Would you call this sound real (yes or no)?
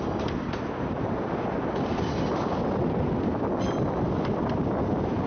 yes